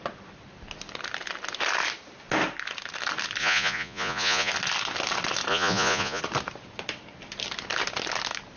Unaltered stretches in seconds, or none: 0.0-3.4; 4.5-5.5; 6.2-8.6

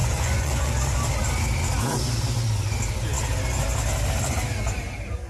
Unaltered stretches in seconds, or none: 0.7-5.3

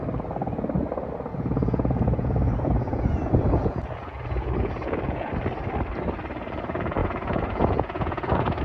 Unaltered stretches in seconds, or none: 0.0-1.3; 5.3-7.0